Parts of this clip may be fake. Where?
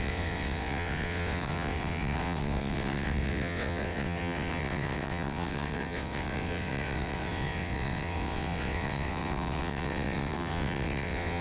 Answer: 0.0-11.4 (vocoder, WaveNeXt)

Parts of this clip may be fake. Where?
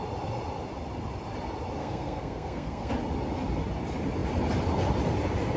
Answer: 1.8-2.9 (codec, SNAC)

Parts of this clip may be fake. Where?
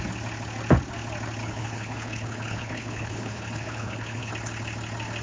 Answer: 1.4-4.3 (codec, HILCodec)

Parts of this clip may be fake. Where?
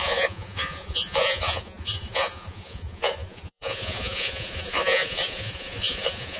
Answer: 0.0-6.4 (vocoder, Vocos)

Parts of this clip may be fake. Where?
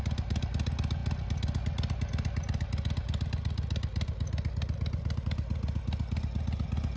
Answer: none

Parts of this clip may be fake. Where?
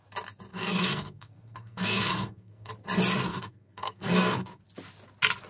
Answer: 0.5-2.7 (codec, SNAC); 3.3-4.6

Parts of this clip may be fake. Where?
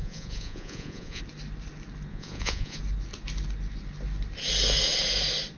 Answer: 0.0-1.2 (vocoder, Vocos); 2.1-2.8